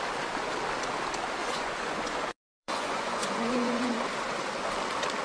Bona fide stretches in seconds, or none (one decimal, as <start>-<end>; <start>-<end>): 0.0-1.4; 3.9-5.2